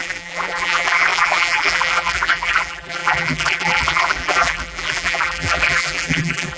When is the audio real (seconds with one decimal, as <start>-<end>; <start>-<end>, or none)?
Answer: none